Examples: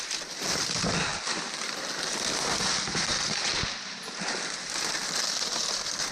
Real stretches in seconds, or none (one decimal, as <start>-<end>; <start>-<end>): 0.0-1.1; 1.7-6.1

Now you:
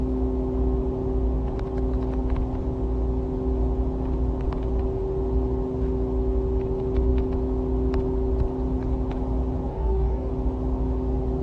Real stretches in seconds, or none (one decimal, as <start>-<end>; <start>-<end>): 0.0-9.7; 10.3-11.4

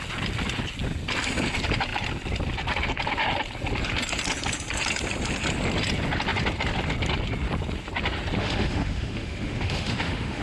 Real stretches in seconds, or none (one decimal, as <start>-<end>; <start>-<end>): 0.0-8.4

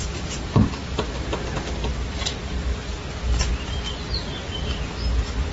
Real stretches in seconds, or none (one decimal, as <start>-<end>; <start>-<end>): 0.0-5.5

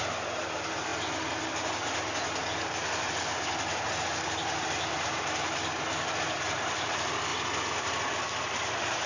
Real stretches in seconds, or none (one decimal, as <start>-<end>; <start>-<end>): 0.9-4.8; 7.3-7.8

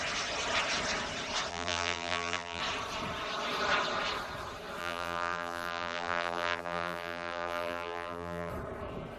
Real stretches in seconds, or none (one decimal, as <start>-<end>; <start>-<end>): 0.0-1.5; 2.6-4.8; 8.5-9.2

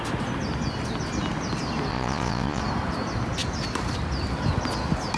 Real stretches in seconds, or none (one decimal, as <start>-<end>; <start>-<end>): 0.0-1.9; 2.6-5.2